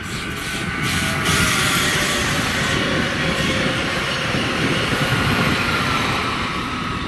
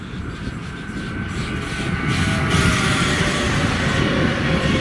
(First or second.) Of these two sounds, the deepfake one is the first